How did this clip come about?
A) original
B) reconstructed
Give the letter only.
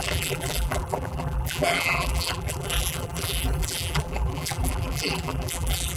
B